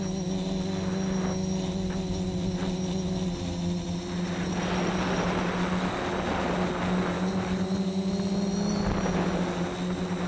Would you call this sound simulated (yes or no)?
no